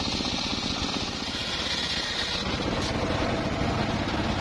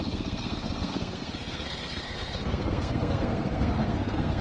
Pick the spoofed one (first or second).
second